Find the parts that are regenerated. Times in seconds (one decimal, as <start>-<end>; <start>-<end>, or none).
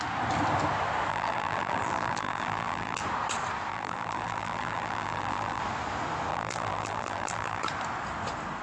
1.1-3.0; 3.7-5.6; 6.3-7.6